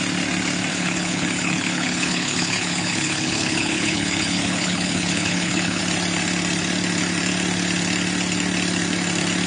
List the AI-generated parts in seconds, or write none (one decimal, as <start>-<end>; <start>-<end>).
0.7-5.8